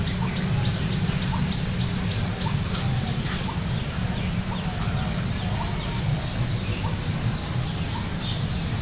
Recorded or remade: recorded